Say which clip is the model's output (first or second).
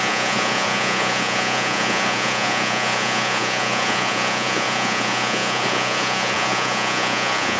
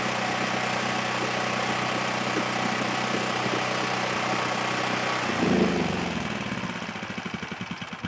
first